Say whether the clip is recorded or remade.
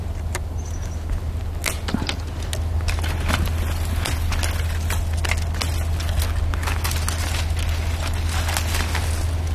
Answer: recorded